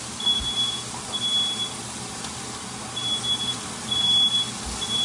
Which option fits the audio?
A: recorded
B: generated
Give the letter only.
A